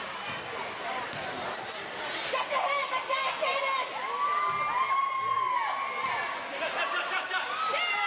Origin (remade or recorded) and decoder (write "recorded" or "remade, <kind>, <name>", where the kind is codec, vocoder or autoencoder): recorded